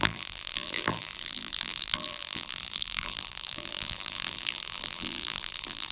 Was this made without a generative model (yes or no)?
no